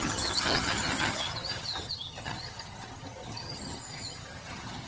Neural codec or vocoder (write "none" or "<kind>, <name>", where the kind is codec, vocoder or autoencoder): vocoder, HiFi-GAN